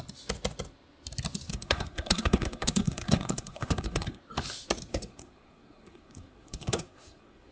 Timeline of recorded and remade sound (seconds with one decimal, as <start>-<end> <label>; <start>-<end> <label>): 0.0-1.5 recorded; 1.5-4.2 remade; 4.2-4.9 recorded; 4.9-7.5 remade